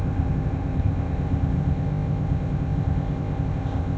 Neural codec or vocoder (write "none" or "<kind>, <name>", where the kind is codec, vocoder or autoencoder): codec, ZipCodec